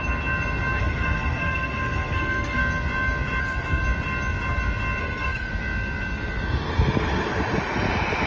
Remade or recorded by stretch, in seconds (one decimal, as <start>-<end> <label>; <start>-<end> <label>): 0.0-0.8 recorded; 0.8-2.6 remade; 2.6-3.4 recorded; 3.4-3.8 remade; 3.8-5.0 recorded; 5.0-5.5 remade; 5.5-8.3 recorded